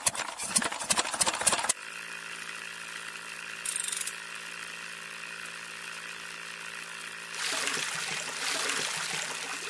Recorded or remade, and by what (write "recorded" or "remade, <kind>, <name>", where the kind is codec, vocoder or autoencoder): recorded